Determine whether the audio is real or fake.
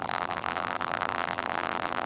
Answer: fake